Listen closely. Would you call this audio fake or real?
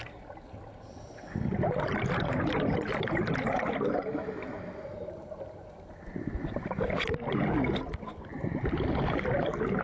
real